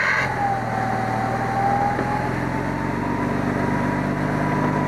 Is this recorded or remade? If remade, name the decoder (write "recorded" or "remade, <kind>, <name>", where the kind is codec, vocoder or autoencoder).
recorded